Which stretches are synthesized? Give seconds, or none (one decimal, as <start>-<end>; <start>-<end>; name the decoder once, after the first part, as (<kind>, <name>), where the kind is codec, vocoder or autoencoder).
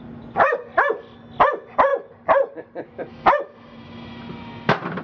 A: none